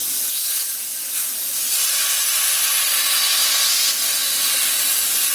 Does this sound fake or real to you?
real